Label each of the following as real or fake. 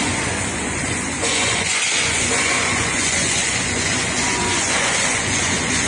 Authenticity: fake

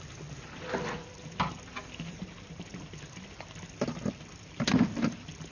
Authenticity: real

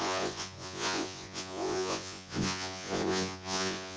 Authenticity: fake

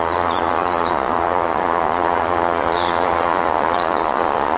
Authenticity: fake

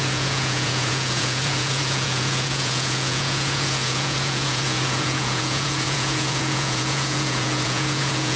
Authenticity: fake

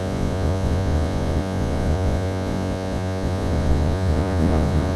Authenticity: fake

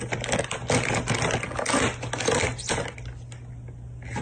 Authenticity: real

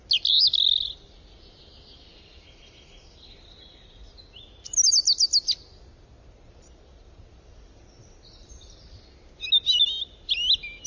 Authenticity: real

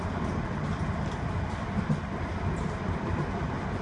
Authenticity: real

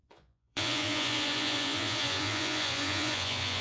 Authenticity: fake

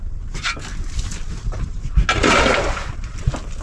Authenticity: real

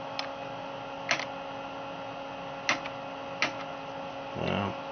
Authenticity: real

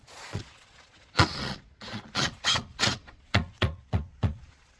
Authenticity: fake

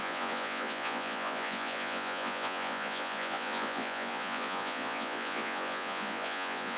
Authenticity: fake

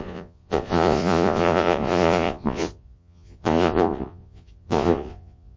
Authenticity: fake